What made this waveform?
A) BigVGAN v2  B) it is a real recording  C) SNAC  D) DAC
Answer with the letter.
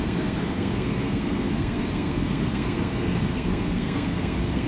C